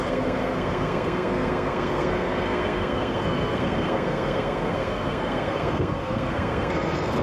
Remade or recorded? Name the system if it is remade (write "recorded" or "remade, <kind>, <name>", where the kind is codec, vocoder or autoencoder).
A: remade, codec, SNAC